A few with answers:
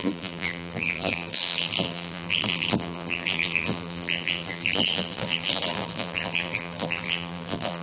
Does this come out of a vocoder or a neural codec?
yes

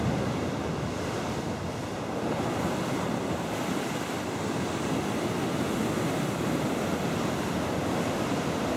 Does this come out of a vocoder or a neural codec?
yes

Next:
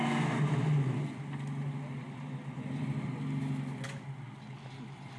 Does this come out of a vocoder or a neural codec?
no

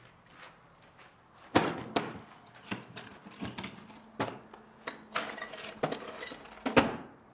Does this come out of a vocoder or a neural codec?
no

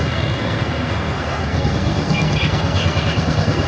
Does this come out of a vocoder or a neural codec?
yes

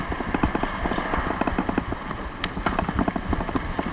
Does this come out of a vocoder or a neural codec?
no